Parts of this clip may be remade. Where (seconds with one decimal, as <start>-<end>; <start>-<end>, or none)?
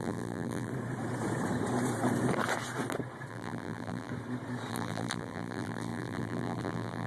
0.0-0.7; 3.3-4.1; 4.7-7.1